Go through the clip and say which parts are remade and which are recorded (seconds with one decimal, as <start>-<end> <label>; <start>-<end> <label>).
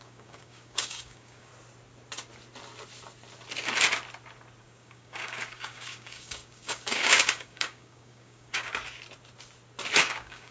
0.0-1.5 remade; 1.5-4.6 recorded; 4.6-8.7 remade; 8.7-10.0 recorded; 10.0-10.5 remade